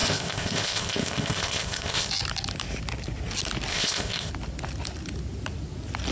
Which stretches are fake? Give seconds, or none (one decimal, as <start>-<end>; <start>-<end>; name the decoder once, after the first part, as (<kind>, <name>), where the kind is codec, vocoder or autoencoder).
0.0-2.1 (codec, ZipCodec); 3.7-4.3